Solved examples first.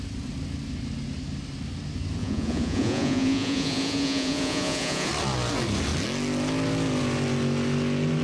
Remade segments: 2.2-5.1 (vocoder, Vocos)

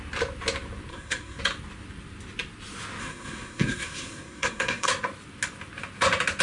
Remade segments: 0.9-1.4 (codec, SNAC); 3.0-4.9